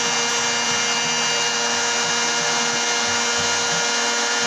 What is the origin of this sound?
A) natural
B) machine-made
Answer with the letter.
A